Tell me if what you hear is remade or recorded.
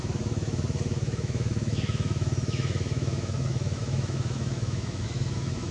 remade